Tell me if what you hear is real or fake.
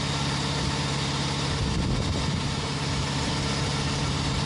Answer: real